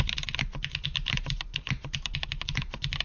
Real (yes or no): yes